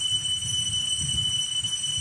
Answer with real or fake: real